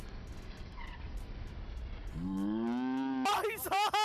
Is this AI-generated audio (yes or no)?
no